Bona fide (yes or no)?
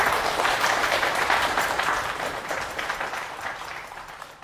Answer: no